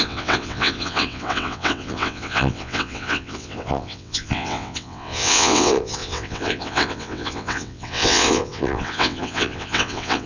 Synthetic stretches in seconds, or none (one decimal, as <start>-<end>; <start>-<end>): 0.0-10.3